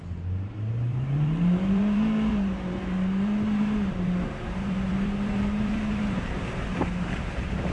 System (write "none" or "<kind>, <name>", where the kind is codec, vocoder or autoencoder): vocoder, BigVGAN v2